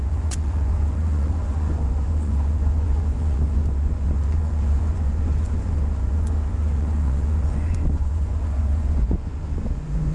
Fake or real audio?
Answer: fake